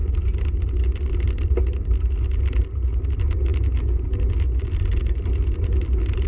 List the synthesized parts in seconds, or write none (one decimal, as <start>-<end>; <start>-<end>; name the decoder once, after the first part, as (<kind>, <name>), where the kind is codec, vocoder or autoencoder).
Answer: none